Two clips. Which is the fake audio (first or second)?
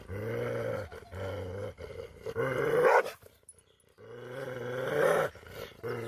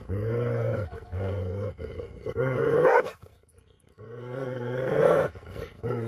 second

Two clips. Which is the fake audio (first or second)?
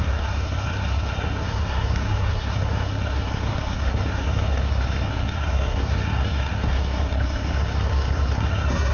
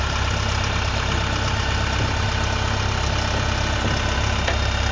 first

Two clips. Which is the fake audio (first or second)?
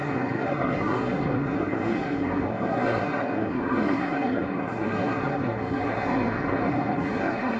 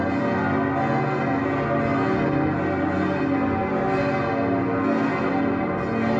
first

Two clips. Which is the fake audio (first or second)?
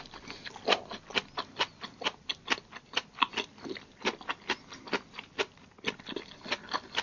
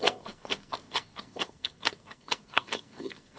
second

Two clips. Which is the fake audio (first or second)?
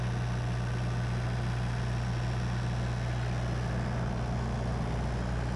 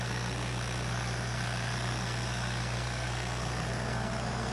second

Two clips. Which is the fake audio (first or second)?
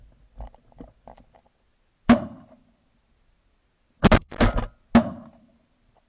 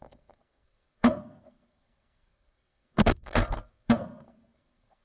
second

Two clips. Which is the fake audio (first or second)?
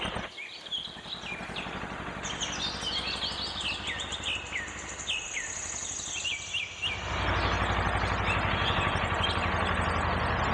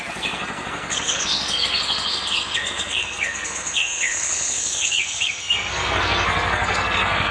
second